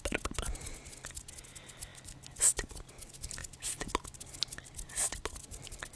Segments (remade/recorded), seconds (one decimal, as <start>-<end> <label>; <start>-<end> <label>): 0.0-6.0 recorded